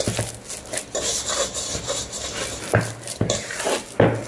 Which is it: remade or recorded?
recorded